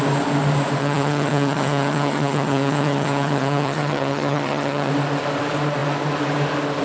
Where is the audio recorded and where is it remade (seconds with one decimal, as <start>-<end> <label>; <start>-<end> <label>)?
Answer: 0.0-0.8 recorded; 0.8-4.9 remade; 4.9-6.8 recorded